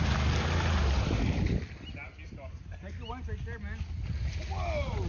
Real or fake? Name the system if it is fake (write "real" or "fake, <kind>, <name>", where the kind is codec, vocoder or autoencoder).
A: real